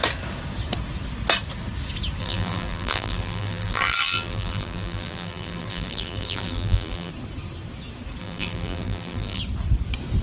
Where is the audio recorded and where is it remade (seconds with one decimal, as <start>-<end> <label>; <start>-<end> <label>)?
0.0-2.2 recorded; 2.2-7.1 remade; 7.1-8.2 recorded; 8.2-9.4 remade; 9.4-10.2 recorded